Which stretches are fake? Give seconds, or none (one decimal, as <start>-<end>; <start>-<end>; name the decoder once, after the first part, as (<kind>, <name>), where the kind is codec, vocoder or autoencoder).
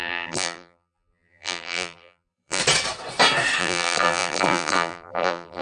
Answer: 0.0-2.6 (vocoder, BigVGAN v2); 3.6-5.6